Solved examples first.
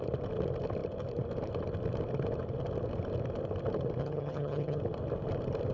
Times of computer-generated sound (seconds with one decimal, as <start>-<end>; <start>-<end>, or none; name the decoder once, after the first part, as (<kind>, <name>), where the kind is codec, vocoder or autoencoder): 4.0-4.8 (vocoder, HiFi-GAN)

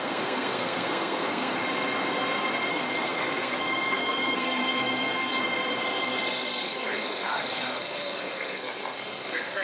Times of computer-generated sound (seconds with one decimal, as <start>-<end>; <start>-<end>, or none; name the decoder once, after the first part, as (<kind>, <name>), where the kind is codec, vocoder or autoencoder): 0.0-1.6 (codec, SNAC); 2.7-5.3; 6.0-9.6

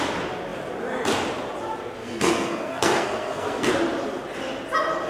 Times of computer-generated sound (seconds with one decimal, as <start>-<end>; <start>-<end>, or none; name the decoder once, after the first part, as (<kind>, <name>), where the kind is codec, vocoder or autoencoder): 2.0-3.7 (codec, SNAC)

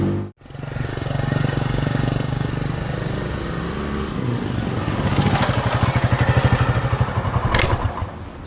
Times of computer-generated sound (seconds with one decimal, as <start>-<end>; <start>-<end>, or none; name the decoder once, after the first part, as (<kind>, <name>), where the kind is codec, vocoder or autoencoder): 0.9-2.5 (codec, DAC)

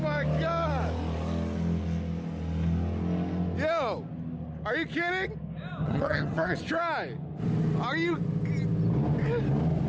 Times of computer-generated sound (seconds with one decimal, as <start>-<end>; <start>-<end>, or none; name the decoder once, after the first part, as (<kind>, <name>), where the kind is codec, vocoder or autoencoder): 5.8-6.6 (vocoder, HiFi-GAN)

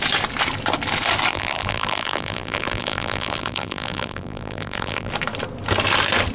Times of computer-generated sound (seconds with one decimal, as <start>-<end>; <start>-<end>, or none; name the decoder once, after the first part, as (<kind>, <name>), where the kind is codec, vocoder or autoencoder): 1.3-5.1 (vocoder, BigVGAN v2)

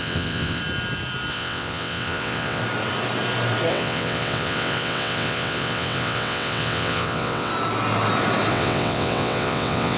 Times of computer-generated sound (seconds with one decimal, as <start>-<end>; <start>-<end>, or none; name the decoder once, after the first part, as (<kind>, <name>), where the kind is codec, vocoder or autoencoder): 0.0-0.6 (vocoder, WaveNeXt); 1.3-2.6; 3.7-7.5; 8.5-10.0